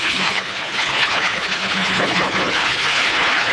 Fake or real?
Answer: fake